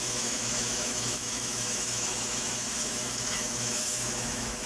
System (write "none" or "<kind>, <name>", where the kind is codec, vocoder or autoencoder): autoencoder, DAC-VAE